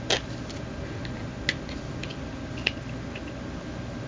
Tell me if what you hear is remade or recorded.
recorded